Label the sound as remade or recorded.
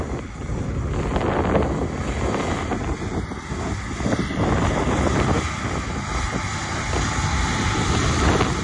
recorded